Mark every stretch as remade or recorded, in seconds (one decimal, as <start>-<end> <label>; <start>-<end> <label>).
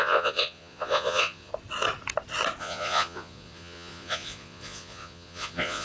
0.0-1.5 remade; 1.5-2.6 recorded; 2.6-5.8 remade